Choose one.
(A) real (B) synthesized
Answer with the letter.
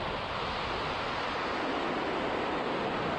A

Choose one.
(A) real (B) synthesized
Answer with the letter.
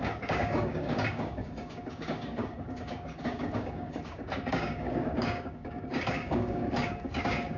B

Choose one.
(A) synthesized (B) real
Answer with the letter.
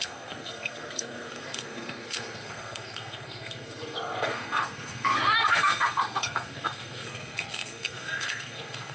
A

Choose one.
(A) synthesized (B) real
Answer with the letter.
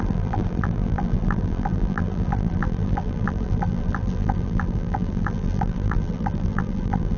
A